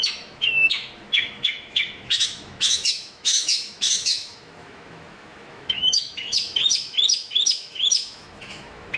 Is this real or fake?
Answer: fake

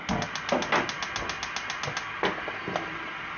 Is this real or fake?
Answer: real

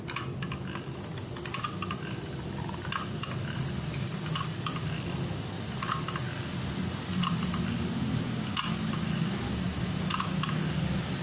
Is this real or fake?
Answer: real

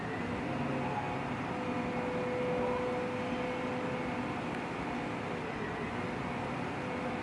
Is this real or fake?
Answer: real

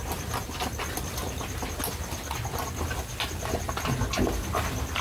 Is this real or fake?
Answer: real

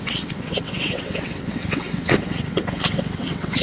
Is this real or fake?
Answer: fake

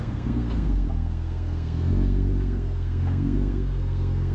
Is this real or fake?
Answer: fake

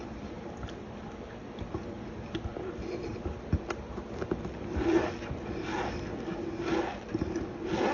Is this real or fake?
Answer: real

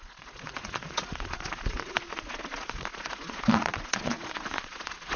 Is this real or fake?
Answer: fake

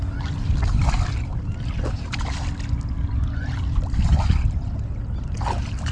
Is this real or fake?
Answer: real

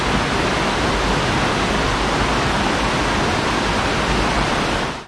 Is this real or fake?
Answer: real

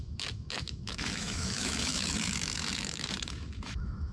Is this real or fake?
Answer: fake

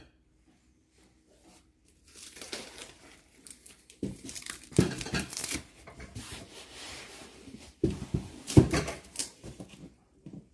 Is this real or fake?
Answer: fake